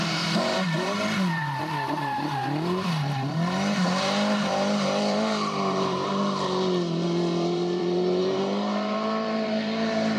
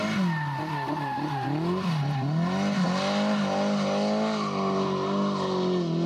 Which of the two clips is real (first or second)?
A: second